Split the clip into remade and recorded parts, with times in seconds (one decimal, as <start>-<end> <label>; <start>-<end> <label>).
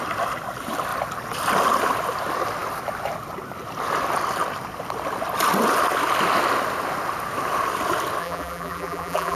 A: 0.0-8.2 recorded; 8.2-9.4 remade